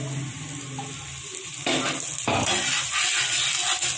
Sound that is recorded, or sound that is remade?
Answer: recorded